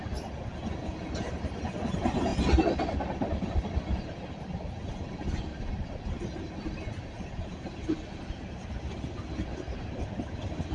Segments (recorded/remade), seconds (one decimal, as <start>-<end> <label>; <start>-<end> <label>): 0.0-10.7 recorded